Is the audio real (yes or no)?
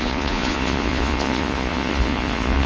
no